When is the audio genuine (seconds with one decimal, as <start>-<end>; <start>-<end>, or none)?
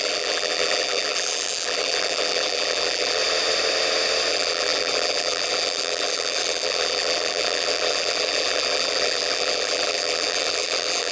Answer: 3.2-4.3